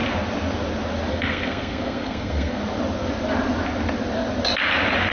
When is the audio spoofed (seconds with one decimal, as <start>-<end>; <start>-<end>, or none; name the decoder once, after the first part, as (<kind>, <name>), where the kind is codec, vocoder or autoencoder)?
1.1-2.6 (codec, SNAC)